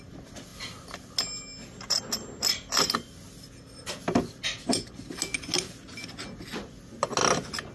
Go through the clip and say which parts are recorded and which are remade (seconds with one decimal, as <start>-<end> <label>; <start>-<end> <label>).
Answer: 0.0-7.7 recorded